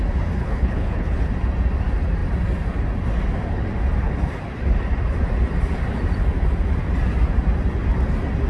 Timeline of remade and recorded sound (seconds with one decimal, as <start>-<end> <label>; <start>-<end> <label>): 0.0-0.4 recorded; 0.4-1.3 remade; 1.3-8.5 recorded